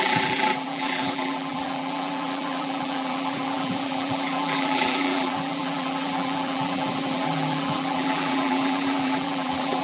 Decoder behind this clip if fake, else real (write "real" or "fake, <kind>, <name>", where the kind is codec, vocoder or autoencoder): fake, vocoder, BigVGAN v2